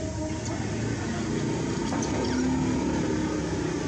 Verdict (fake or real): real